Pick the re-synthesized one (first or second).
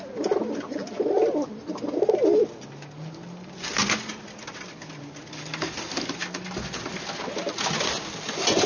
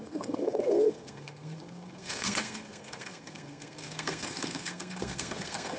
second